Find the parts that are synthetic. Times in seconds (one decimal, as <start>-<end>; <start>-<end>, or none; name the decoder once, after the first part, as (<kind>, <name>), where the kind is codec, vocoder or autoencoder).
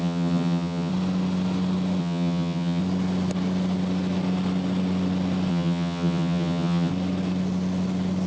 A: 0.0-0.9 (vocoder, HiFi-GAN); 2.0-2.8; 5.5-6.9